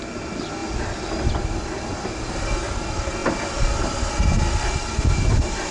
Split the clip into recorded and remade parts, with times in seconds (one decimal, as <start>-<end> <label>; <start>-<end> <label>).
0.0-5.7 recorded